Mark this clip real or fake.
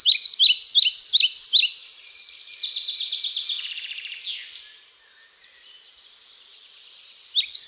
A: real